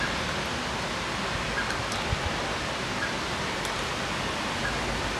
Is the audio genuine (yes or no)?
yes